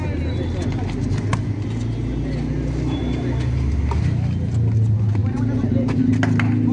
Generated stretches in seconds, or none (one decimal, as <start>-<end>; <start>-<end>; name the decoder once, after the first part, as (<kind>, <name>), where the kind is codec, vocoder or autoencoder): none